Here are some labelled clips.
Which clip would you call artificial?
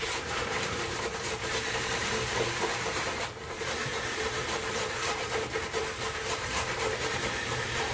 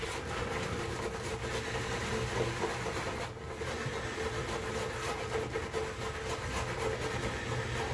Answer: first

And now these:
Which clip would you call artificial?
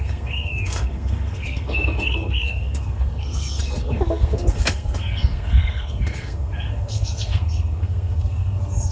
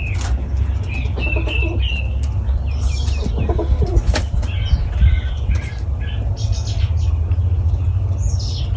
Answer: first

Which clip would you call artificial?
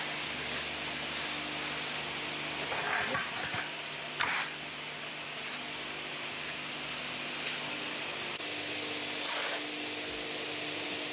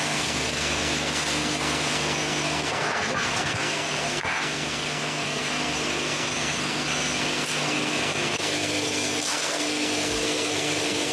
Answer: second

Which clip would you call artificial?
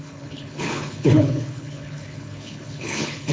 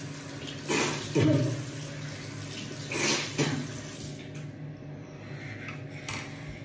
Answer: first